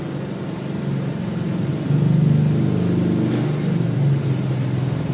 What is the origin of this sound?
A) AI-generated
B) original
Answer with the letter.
B